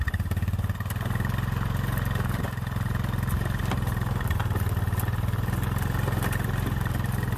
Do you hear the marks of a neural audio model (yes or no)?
no